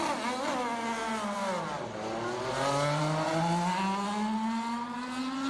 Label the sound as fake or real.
real